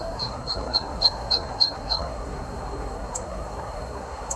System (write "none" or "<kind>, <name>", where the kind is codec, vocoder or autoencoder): codec, SNAC